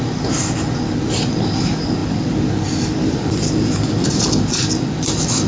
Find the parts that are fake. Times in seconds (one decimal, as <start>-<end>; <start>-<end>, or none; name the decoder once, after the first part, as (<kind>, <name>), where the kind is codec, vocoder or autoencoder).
2.0-4.1 (vocoder, BigVGAN v2)